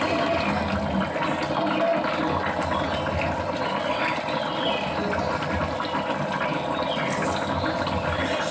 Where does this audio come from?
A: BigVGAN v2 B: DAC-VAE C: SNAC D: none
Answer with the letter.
D